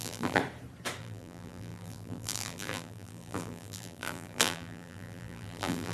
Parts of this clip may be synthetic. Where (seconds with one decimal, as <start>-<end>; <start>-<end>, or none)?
0.0-0.4; 1.0-5.9

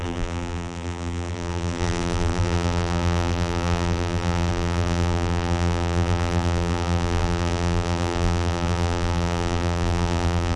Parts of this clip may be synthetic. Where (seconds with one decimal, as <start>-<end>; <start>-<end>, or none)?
0.0-10.6